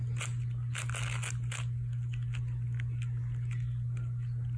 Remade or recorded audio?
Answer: recorded